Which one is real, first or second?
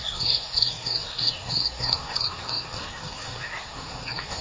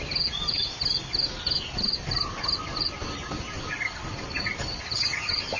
second